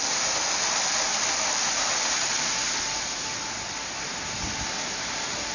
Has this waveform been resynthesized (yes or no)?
no